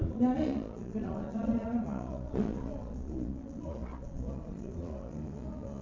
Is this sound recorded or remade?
remade